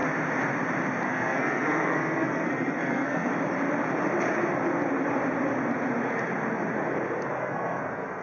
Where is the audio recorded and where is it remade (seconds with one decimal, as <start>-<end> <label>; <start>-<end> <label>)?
0.0-1.1 recorded; 1.1-3.3 remade; 3.3-7.4 recorded; 7.4-8.2 remade